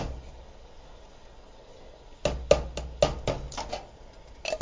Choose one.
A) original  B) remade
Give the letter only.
A